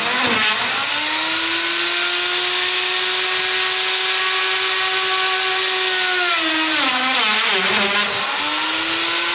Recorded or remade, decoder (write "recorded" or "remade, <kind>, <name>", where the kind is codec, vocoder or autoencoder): recorded